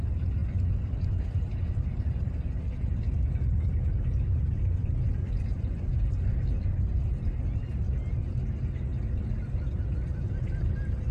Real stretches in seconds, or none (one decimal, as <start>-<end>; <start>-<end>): 0.0-11.1